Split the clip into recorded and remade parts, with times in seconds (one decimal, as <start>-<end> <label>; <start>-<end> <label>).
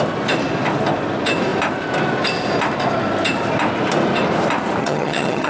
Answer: 0.0-4.8 recorded; 4.8-5.5 remade